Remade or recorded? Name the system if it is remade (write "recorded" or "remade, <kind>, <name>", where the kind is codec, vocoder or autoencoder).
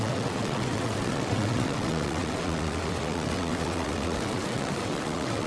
remade, vocoder, WaveNeXt